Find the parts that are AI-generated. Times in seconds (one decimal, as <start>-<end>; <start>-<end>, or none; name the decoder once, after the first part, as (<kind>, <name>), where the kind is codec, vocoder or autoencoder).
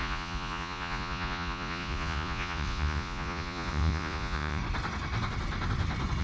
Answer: 0.0-4.6 (vocoder, Vocos)